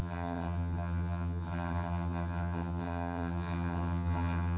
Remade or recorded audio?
remade